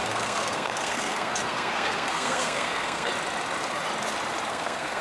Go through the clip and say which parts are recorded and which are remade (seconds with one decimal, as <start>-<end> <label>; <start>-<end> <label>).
0.0-3.1 remade; 3.1-4.5 recorded; 4.5-5.0 remade